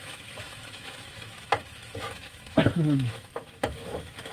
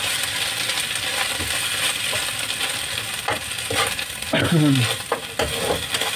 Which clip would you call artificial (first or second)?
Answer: first